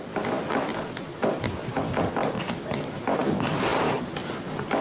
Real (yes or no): yes